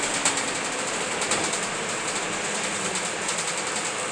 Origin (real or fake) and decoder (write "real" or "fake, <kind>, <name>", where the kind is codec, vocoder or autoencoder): real